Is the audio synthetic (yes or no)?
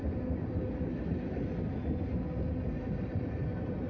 no